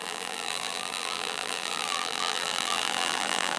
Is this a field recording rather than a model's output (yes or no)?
no